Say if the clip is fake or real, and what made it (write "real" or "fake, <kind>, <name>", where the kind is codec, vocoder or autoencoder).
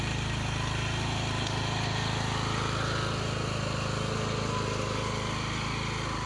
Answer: real